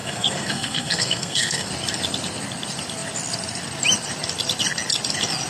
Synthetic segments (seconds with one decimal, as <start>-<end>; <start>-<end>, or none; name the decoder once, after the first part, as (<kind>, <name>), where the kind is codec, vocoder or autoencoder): 0.0-1.7 (codec, SNAC)